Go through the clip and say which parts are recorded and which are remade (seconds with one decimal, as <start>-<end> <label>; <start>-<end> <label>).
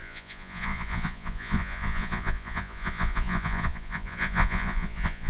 0.0-5.3 remade